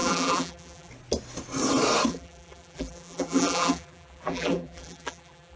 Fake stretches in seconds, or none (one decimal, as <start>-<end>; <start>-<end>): 0.0-0.9; 2.1-5.6